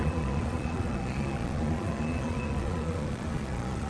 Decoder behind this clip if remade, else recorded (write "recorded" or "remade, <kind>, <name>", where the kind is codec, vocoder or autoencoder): remade, vocoder, Vocos